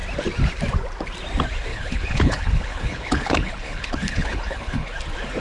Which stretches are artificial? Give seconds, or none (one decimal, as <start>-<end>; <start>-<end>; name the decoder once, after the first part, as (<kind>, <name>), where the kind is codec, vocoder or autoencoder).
1.7-4.9 (codec, HILCodec)

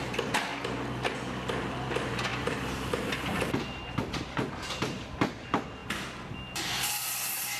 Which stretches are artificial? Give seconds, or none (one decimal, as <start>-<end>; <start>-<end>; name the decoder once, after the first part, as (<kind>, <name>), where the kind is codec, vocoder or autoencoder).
0.0-0.5 (vocoder, BigVGAN v2); 1.3-7.6

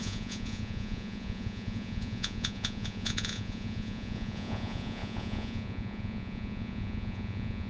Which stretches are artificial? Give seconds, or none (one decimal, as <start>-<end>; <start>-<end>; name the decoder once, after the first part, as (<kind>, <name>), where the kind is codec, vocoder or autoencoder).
0.0-7.7 (vocoder, Vocos)